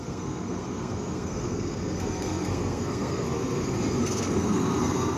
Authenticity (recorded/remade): remade